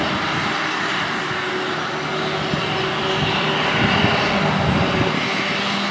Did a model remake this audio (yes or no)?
no